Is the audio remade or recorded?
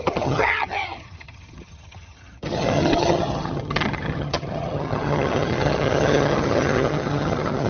remade